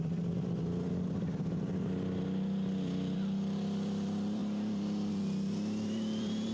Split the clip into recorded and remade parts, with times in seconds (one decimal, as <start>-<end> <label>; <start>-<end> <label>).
0.0-6.5 remade